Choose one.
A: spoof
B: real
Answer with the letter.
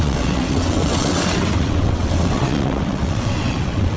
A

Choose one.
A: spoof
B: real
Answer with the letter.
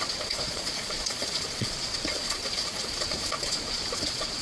A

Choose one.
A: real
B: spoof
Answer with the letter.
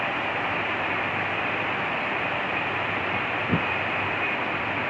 B